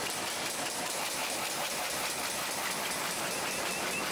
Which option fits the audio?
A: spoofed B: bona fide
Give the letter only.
B